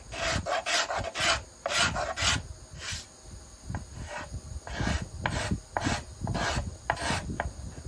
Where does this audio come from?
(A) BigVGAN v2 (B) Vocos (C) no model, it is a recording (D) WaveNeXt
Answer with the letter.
C